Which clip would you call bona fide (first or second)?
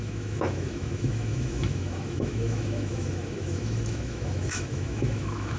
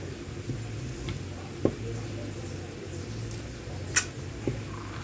second